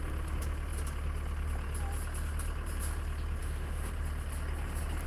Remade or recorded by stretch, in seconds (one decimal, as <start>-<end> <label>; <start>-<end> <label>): 0.0-3.4 recorded; 3.4-3.9 remade; 3.9-5.1 recorded